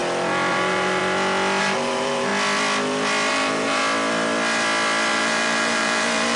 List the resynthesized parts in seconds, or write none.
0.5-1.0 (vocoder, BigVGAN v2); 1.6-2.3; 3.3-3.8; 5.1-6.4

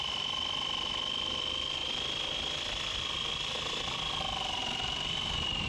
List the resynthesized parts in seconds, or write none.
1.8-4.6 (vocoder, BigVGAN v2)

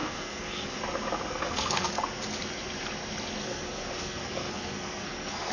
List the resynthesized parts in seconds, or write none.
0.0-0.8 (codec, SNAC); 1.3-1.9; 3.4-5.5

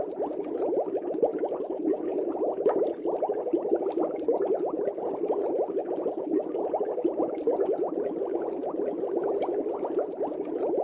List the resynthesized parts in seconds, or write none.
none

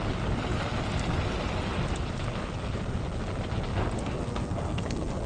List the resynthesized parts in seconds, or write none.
4.0-5.3 (codec, SNAC)

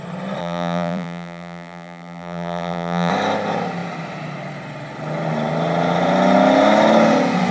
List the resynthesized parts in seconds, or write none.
0.4-3.1 (vocoder, BigVGAN v2)